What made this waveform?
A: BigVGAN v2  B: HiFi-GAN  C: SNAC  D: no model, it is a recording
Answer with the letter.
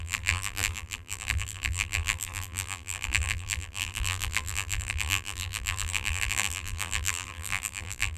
A